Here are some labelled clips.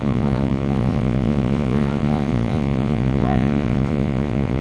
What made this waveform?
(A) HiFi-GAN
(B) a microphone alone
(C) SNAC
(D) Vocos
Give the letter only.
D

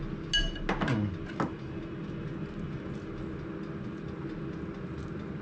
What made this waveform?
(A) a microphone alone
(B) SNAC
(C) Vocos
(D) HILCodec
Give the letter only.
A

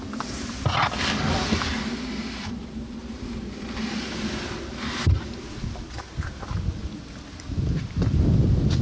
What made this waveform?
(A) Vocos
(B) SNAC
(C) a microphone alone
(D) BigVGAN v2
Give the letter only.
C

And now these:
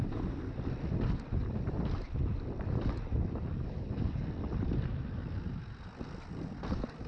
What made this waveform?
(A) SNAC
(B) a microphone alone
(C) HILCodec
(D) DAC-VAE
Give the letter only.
B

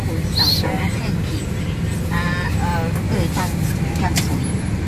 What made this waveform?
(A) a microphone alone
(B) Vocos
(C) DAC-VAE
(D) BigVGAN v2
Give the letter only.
A